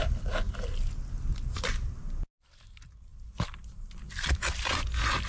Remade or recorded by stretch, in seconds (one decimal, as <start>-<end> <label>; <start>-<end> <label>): 0.0-5.3 recorded